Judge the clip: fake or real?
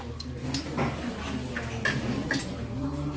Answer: real